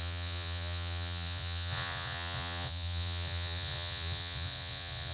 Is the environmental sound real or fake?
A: fake